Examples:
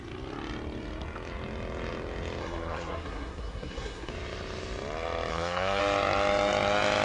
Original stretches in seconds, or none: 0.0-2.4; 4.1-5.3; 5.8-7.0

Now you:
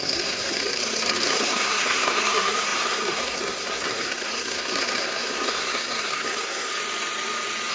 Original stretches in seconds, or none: 6.7-7.7

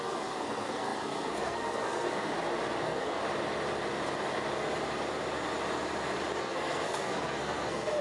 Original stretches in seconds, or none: 2.3-2.8; 3.2-6.4

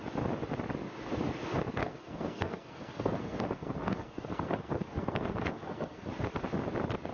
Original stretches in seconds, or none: 0.0-1.8; 6.1-7.1